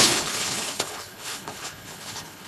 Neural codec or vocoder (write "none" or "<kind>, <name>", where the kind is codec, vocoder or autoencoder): codec, HILCodec